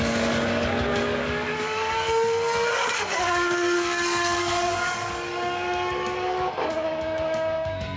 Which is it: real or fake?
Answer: fake